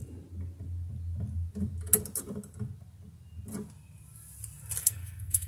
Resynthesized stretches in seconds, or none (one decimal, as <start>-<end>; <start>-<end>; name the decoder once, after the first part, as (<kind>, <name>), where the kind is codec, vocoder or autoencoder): 4.8-5.5 (codec, SNAC)